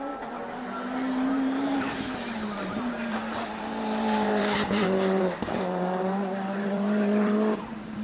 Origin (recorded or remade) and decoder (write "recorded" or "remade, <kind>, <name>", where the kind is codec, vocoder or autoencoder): remade, vocoder, BigVGAN v2